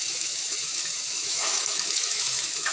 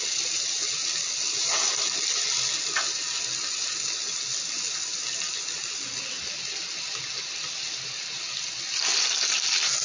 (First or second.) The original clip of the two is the second